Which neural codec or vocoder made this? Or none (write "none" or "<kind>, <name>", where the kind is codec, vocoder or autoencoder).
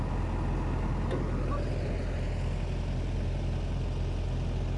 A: none